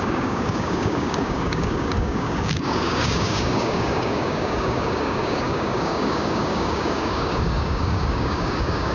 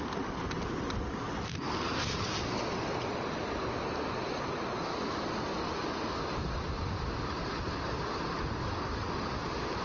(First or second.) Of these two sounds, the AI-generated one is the first